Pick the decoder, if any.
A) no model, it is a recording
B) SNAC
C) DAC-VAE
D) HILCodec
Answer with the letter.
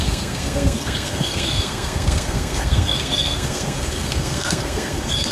B